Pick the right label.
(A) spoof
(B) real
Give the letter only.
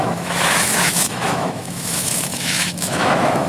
A